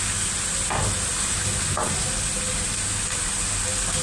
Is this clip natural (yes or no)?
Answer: yes